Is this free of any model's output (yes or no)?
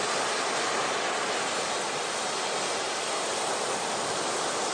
yes